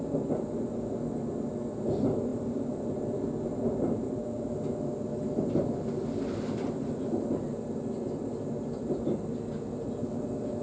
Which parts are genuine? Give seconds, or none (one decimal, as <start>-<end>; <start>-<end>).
0.0-10.6

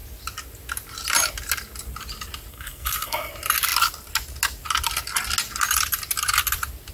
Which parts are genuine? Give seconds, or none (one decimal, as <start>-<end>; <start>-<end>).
0.0-2.5; 3.3-6.9

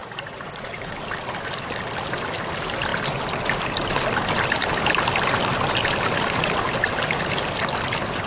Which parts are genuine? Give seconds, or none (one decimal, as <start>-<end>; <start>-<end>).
0.9-8.3

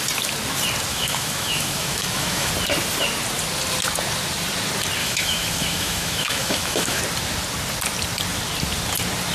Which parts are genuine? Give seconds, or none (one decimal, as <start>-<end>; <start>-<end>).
0.0-0.9; 2.5-5.0; 7.0-9.3